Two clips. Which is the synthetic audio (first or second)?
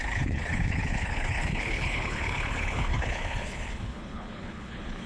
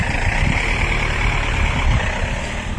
first